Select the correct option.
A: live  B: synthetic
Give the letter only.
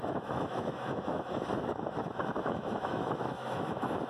B